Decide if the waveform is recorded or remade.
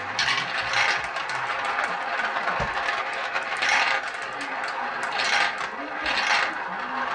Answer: recorded